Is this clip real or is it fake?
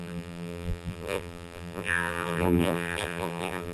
fake